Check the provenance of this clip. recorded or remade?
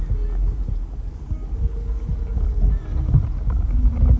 recorded